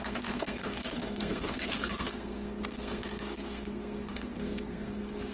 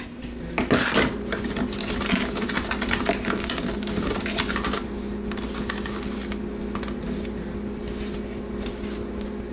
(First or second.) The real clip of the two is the second